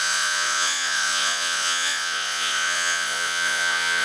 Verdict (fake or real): fake